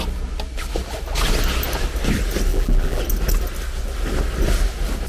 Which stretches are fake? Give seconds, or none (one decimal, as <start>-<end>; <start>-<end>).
2.5-3.0